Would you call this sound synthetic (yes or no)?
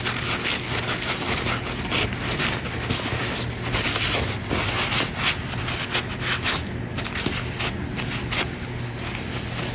no